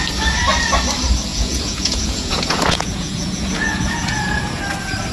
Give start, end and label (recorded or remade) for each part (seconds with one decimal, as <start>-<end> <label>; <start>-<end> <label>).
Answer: 0.0-1.3 recorded; 1.3-4.4 remade; 4.4-5.1 recorded